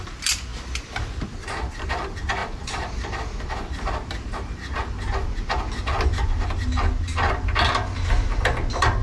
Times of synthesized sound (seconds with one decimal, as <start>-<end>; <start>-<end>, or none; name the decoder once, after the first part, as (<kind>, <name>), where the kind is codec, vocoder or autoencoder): none